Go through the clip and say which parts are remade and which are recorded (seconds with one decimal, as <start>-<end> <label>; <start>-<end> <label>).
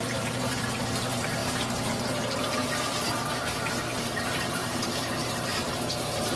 0.0-6.4 remade